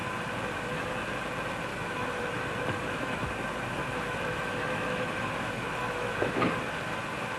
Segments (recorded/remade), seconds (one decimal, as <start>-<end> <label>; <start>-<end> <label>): 0.0-1.7 recorded; 1.7-3.3 remade; 3.3-3.8 recorded; 3.8-6.5 remade; 6.5-7.4 recorded